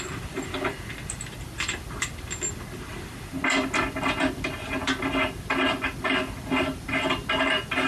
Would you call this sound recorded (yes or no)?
yes